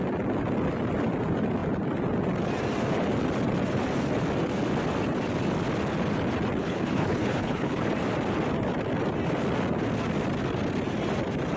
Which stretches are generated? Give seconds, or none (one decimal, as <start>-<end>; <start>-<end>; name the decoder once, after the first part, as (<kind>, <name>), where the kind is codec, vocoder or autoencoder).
6.6-7.8 (codec, HILCodec)

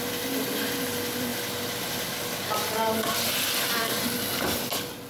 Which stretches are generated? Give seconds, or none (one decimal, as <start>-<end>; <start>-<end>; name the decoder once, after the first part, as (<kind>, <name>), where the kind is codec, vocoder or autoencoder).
none

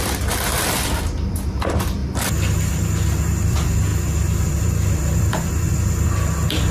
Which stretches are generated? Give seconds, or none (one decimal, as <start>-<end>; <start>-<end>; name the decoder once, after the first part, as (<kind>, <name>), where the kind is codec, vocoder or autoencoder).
0.0-2.0 (vocoder, BigVGAN v2); 2.7-6.7

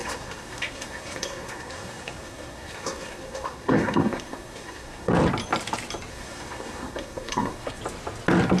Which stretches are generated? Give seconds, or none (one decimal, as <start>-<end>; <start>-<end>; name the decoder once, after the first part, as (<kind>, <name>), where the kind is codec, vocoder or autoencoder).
0.0-5.1 (codec, SNAC); 6.1-7.8